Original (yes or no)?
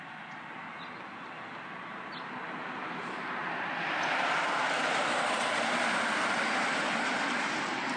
yes